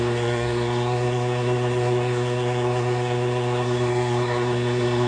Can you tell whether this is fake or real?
fake